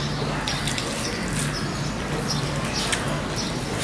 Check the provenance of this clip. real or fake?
real